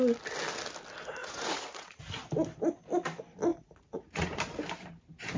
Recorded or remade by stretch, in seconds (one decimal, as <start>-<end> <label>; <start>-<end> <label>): 0.0-1.2 recorded; 1.2-2.0 remade; 2.0-3.5 recorded; 3.5-4.4 remade; 4.4-5.4 recorded